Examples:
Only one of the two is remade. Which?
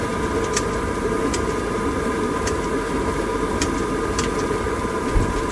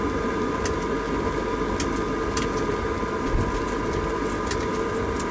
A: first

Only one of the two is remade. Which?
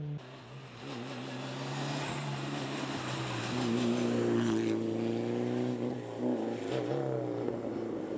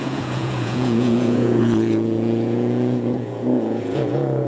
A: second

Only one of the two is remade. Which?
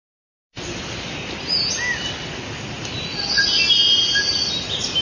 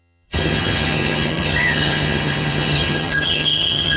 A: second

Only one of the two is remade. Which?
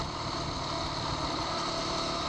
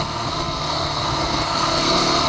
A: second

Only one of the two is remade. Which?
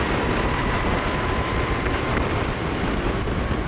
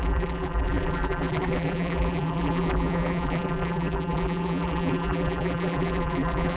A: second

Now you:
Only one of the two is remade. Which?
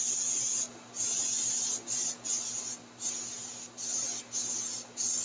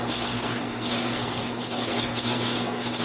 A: second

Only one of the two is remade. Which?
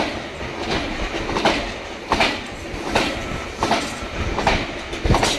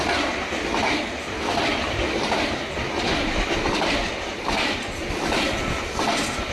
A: second